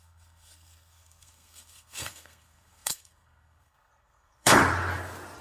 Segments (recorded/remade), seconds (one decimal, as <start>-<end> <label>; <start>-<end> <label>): 0.0-4.6 remade; 4.6-5.4 recorded